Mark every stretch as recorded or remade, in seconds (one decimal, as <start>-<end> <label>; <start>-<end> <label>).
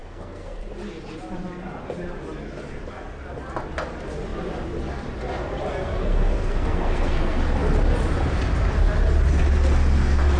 0.0-0.7 remade; 0.7-5.7 recorded; 5.7-7.4 remade; 7.4-10.4 recorded